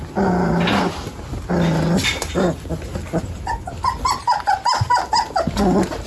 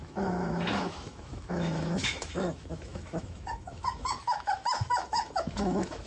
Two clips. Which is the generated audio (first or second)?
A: second